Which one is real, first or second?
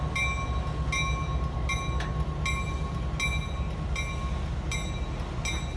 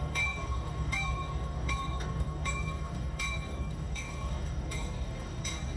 first